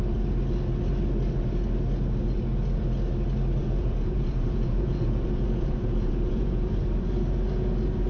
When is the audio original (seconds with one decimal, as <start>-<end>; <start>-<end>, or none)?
0.0-3.6; 6.8-8.1